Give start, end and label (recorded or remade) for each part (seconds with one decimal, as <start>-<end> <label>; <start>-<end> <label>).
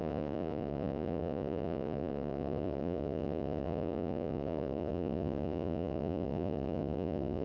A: 0.0-7.4 remade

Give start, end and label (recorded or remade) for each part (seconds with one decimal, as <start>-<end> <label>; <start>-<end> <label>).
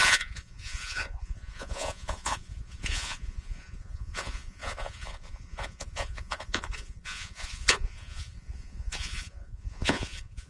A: 0.0-10.5 remade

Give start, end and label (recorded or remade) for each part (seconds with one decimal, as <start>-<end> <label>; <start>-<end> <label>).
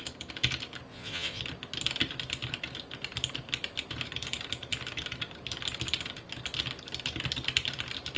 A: 0.0-0.9 recorded; 0.9-1.4 remade; 1.4-8.2 recorded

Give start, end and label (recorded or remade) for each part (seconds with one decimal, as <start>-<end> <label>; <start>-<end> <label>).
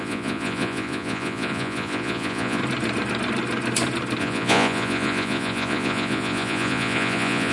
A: 0.0-2.6 remade; 2.6-4.2 recorded; 4.2-7.5 remade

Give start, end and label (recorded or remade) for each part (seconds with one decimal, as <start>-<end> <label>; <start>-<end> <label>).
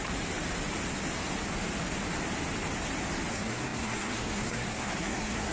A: 0.0-3.3 recorded; 3.3-5.5 remade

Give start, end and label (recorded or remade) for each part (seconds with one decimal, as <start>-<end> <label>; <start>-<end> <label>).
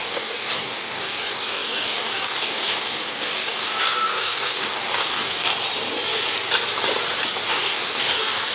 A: 0.0-5.5 remade; 5.5-7.5 recorded; 7.5-8.5 remade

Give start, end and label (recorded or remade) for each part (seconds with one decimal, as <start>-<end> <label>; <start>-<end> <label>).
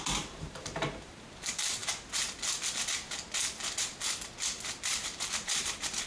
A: 0.0-1.8 remade; 1.8-4.8 recorded; 4.8-6.1 remade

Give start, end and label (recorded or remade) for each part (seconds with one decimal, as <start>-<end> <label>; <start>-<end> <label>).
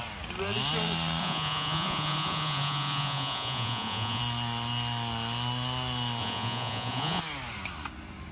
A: 0.0-1.2 recorded; 1.2-4.2 remade; 4.2-6.2 recorded; 6.2-7.2 remade; 7.2-8.3 recorded